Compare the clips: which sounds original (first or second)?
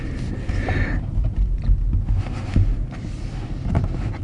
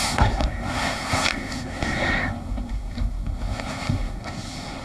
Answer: first